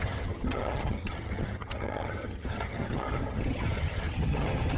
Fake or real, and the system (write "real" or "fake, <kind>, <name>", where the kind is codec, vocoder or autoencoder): fake, vocoder, HiFi-GAN